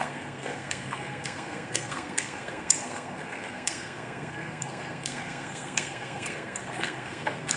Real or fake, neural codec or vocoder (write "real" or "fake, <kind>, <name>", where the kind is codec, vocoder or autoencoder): fake, codec, SNAC